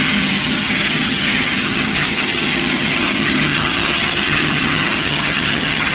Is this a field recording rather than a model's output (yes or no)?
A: no